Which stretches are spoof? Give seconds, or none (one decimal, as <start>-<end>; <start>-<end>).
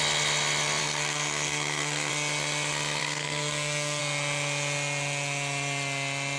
0.8-2.1; 3.0-4.0